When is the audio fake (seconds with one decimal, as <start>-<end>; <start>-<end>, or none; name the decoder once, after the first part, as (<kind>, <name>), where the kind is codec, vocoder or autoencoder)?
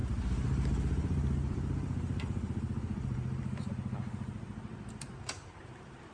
0.0-3.7 (vocoder, BigVGAN v2); 4.7-6.1